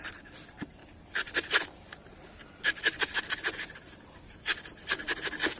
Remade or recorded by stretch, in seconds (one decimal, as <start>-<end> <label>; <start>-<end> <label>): 0.0-5.6 recorded